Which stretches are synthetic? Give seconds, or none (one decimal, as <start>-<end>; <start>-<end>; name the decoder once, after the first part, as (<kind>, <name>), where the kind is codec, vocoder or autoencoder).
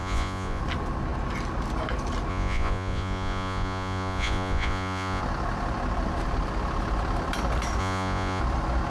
0.0-0.6 (vocoder, Vocos); 2.3-5.2; 7.8-8.4